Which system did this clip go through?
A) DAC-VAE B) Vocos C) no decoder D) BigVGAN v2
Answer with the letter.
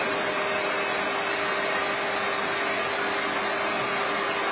C